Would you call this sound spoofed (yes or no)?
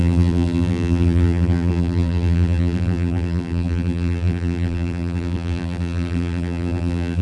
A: yes